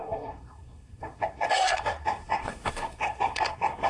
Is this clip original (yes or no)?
no